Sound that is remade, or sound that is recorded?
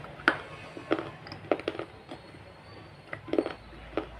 recorded